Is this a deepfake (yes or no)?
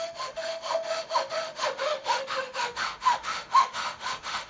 yes